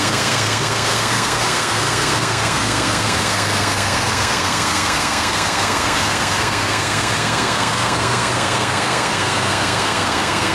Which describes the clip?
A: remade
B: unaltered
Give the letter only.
A